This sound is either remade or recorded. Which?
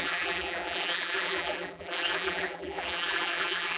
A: remade